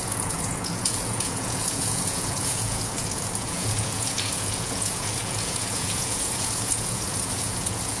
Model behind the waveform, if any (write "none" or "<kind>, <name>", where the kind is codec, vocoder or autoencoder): vocoder, Vocos